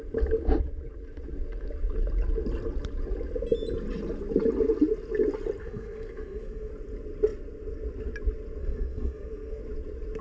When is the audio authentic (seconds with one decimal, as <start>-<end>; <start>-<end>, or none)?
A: 0.0-5.6; 6.7-8.6; 9.6-10.2